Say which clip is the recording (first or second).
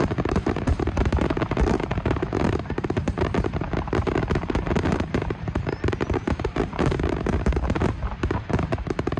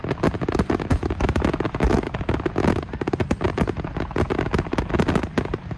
second